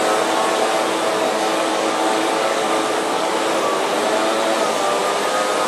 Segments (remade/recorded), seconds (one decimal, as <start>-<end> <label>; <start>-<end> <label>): 0.0-1.1 recorded; 1.1-3.3 remade; 3.3-5.7 recorded